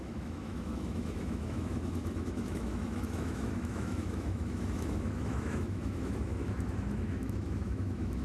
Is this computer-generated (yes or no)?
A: yes